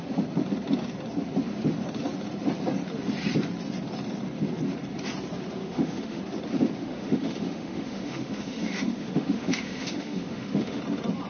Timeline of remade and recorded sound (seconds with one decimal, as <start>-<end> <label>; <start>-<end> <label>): 0.0-5.6 recorded; 5.6-6.2 remade; 6.2-6.8 recorded; 6.8-10.8 remade; 10.8-11.3 recorded